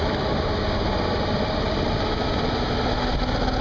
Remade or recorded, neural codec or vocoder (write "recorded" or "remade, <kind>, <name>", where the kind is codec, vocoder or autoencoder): recorded